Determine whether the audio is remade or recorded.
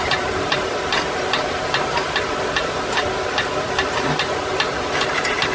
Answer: recorded